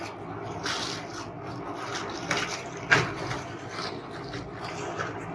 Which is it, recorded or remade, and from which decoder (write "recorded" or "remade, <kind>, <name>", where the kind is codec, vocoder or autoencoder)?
recorded